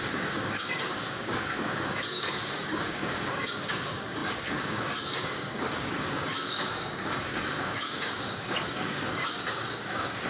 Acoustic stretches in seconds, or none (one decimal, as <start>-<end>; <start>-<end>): none